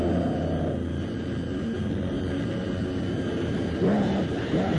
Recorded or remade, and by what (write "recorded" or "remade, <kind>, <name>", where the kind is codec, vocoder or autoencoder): recorded